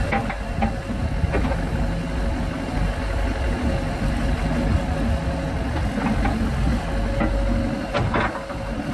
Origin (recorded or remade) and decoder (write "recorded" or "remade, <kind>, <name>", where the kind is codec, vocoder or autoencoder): recorded